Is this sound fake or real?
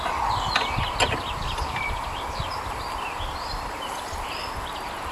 real